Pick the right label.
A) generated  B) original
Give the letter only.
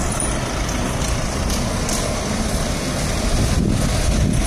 B